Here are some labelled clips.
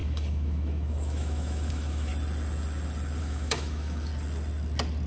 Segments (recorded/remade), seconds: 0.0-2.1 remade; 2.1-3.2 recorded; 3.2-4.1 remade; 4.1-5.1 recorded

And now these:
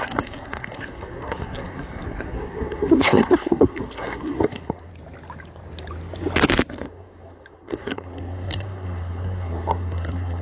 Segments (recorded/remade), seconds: 0.0-4.9 remade; 4.9-6.7 recorded; 6.7-10.4 remade